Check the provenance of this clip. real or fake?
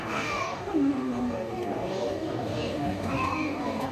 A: fake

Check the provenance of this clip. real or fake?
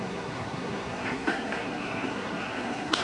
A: fake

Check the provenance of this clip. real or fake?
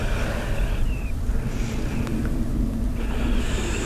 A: real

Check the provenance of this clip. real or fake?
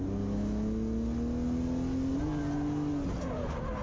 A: real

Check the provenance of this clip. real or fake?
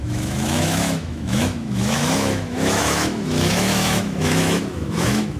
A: fake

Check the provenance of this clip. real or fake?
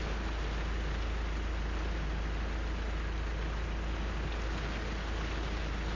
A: real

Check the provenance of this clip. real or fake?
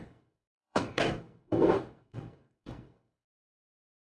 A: fake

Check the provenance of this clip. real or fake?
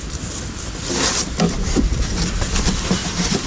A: fake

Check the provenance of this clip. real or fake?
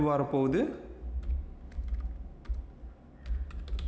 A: real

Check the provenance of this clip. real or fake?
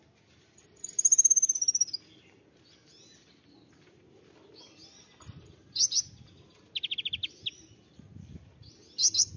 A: real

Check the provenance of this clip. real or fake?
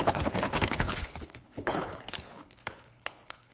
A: fake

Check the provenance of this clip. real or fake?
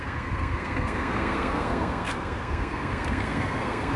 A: fake